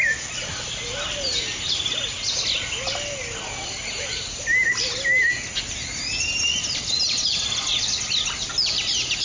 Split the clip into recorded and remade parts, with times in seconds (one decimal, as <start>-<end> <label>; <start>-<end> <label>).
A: 0.0-9.2 recorded